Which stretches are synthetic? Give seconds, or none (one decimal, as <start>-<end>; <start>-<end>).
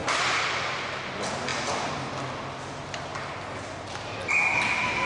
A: none